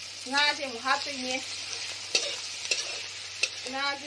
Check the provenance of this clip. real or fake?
real